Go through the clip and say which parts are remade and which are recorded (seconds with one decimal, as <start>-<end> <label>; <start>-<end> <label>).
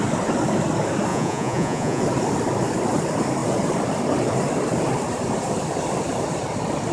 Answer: 0.0-1.1 recorded; 1.1-2.0 remade; 2.0-6.9 recorded